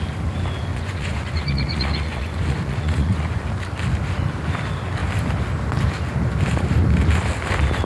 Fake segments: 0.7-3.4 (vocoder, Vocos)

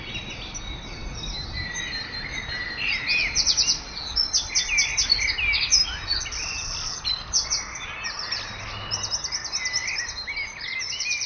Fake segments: none

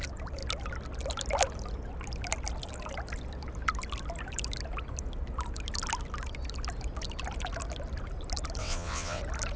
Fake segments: 8.6-9.2 (vocoder, WaveNeXt)